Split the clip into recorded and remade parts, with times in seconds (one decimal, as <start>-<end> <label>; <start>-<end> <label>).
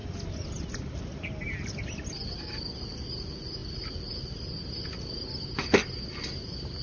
0.0-6.8 recorded